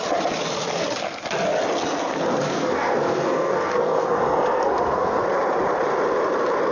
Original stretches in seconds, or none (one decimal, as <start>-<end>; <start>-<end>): 0.0-2.5; 5.2-6.7